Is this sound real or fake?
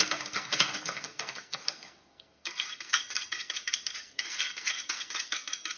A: fake